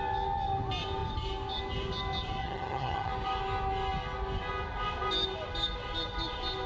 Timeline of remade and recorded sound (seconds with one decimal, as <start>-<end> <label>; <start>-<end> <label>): 0.0-2.4 recorded; 2.4-3.1 remade; 3.1-6.7 recorded